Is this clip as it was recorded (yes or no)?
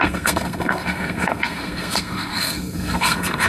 no